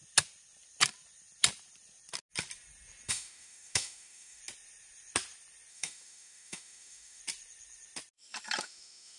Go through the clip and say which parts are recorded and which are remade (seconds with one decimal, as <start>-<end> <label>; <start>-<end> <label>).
0.0-3.1 recorded; 3.1-4.4 remade; 4.4-5.7 recorded; 5.7-7.2 remade; 7.2-8.6 recorded; 8.6-9.2 remade